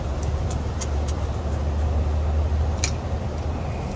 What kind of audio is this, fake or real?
real